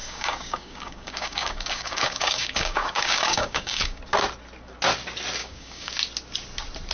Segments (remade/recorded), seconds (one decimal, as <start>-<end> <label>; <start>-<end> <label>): 0.0-4.0 remade; 4.0-5.4 recorded; 5.4-5.9 remade; 5.9-6.9 recorded